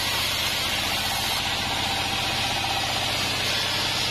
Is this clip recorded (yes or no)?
yes